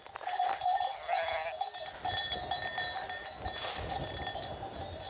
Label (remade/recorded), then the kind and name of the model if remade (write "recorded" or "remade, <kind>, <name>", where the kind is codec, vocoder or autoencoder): recorded